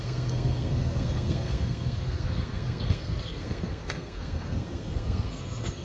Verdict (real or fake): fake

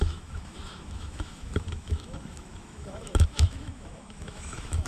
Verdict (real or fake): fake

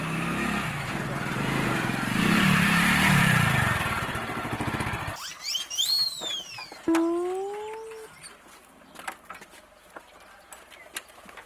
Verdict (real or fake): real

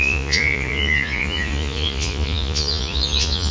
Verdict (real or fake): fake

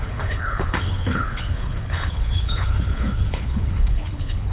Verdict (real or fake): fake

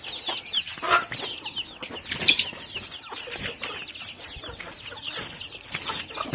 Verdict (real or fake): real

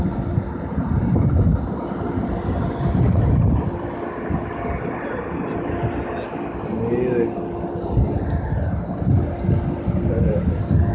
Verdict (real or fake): real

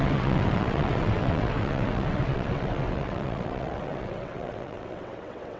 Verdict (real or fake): fake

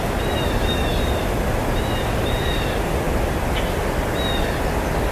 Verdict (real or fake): real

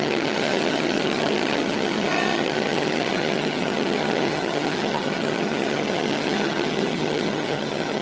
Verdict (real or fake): fake